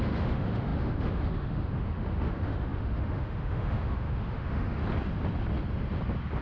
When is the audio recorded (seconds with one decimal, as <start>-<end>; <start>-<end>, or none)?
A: 4.8-6.4